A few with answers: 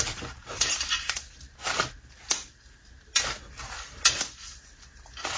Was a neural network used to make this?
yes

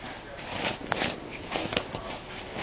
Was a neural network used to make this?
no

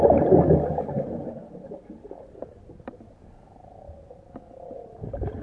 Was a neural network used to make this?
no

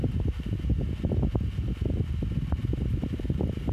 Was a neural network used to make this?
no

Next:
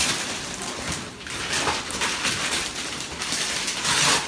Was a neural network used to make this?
no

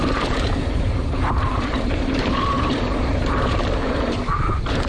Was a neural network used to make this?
yes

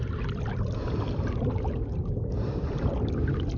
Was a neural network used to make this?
no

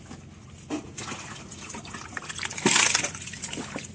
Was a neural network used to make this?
no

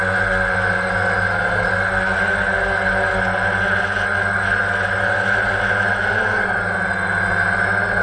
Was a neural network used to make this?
no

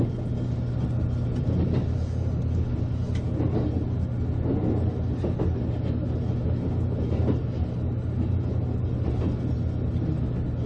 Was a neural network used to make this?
no